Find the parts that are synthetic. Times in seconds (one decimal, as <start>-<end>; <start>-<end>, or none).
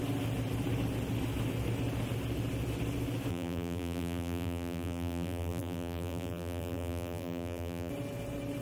3.3-7.9